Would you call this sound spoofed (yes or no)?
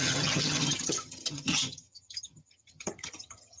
yes